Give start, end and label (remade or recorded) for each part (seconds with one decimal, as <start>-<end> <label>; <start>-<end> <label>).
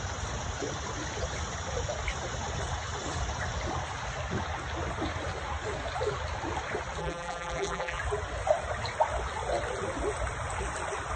0.0-7.0 recorded; 7.0-8.0 remade; 8.0-11.2 recorded